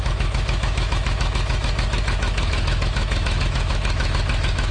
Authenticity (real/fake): fake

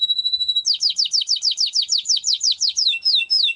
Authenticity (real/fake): fake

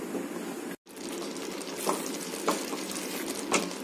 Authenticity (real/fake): real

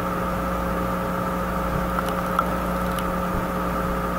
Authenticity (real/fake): real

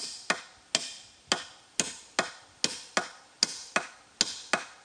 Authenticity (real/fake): real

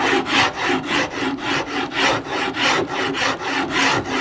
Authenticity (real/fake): real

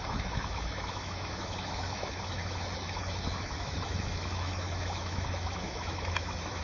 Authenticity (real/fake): fake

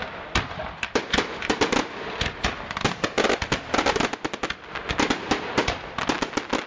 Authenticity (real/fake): real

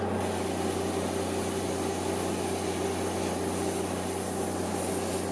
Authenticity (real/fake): real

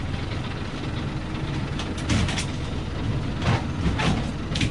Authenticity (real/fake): real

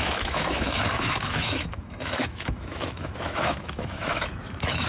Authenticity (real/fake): fake